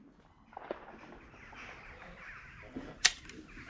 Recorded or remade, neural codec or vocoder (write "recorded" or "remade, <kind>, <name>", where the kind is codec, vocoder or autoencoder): recorded